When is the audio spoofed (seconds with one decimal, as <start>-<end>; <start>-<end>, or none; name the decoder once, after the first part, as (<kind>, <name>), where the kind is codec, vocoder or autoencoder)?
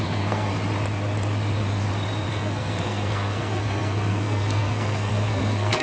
0.0-0.5 (codec, SNAC); 2.3-5.8